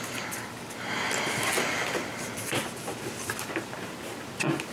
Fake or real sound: real